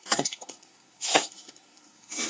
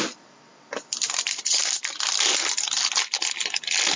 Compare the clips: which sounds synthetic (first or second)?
first